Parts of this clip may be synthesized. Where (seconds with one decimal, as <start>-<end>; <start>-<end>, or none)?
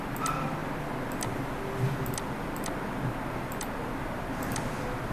0.0-0.6; 2.2-5.1